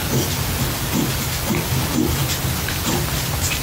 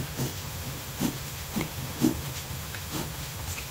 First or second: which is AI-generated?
second